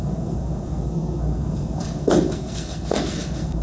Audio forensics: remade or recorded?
remade